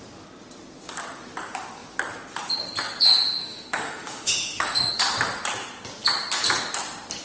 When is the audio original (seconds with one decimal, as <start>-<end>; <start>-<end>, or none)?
0.0-3.4; 4.9-7.2